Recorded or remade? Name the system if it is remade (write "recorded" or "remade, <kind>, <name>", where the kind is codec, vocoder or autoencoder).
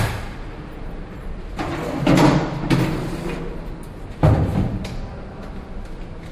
recorded